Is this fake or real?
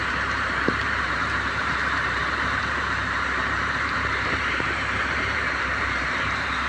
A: fake